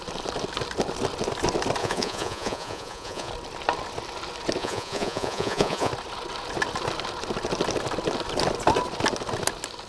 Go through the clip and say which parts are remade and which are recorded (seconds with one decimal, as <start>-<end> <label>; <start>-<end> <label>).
0.0-1.8 recorded; 1.8-3.3 remade; 3.3-4.6 recorded; 4.6-5.9 remade; 5.9-9.9 recorded